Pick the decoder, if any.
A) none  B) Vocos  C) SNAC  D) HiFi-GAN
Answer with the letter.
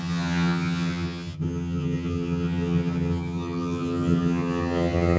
D